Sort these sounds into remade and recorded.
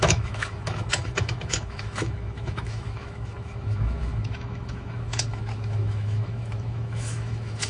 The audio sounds remade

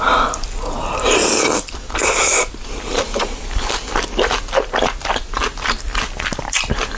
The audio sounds recorded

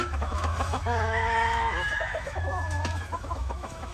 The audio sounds remade